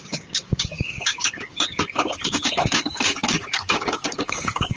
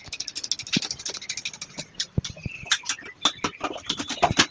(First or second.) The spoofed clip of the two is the first